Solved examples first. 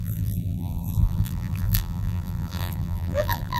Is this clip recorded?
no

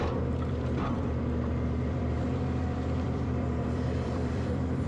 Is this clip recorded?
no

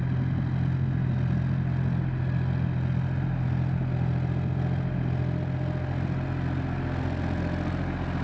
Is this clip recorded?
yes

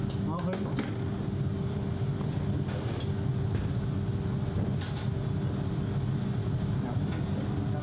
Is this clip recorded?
yes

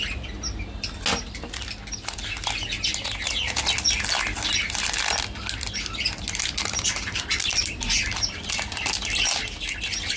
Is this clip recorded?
yes